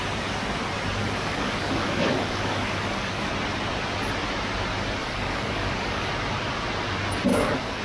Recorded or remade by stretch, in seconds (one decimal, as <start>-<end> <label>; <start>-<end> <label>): 0.0-1.0 recorded; 1.0-3.3 remade; 3.3-5.0 recorded; 5.0-6.1 remade; 6.1-7.3 recorded; 7.3-7.8 remade